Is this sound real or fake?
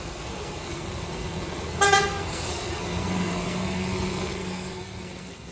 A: fake